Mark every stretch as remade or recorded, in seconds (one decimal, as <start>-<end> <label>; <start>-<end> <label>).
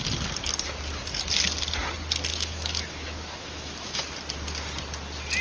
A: 0.0-2.3 recorded; 2.3-4.0 remade; 4.0-5.4 recorded